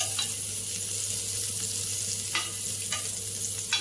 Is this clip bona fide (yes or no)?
yes